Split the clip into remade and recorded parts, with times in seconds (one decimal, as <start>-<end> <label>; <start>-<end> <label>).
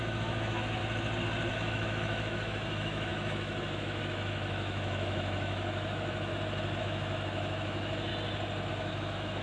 0.0-0.8 remade; 0.8-1.5 recorded; 1.5-6.3 remade; 6.3-6.8 recorded; 6.8-8.1 remade; 8.1-8.7 recorded; 8.7-9.4 remade